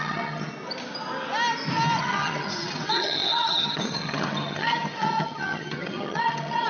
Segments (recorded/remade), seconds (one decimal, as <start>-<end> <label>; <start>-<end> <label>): 0.0-0.5 remade; 0.5-2.0 recorded; 2.0-6.7 remade